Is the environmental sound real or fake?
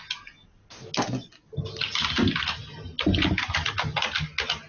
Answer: real